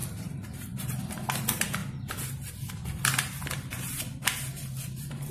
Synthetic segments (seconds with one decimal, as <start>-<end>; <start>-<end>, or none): 0.0-1.0